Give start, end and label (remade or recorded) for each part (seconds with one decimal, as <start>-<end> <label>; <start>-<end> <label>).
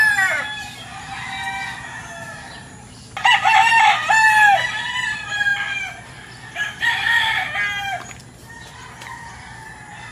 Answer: 0.0-10.1 recorded